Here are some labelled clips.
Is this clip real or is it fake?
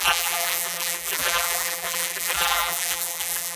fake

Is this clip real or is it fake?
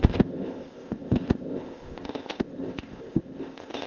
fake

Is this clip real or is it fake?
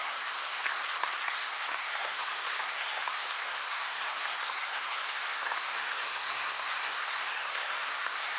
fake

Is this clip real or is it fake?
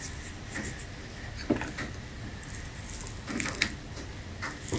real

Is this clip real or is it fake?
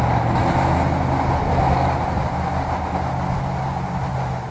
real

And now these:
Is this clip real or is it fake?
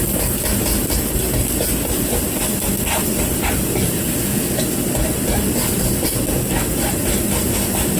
real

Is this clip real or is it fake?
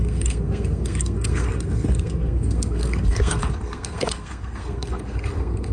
fake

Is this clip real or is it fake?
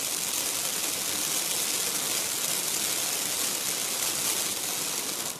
real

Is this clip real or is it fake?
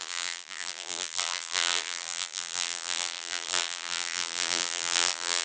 fake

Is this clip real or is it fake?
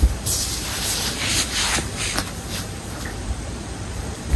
fake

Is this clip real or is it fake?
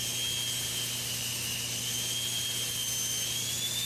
real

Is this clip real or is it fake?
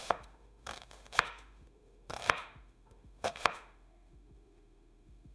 fake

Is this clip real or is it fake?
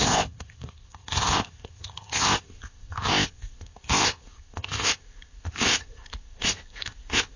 fake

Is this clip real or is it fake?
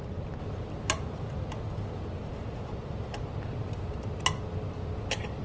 real